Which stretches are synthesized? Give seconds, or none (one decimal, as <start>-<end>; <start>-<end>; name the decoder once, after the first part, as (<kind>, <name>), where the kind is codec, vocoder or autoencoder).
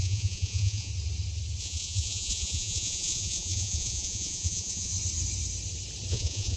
0.0-0.9 (vocoder, Vocos); 1.6-4.9; 6.1-6.6